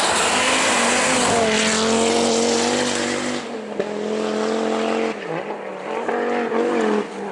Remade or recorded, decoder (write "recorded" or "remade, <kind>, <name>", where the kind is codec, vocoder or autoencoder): recorded